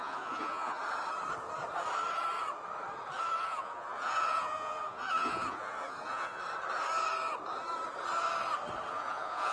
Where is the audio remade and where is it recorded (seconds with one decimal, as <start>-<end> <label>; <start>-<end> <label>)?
0.0-0.8 remade; 0.8-3.4 recorded; 3.4-6.4 remade; 6.4-8.9 recorded; 8.9-9.5 remade